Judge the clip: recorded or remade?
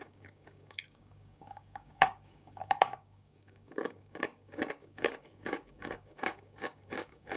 remade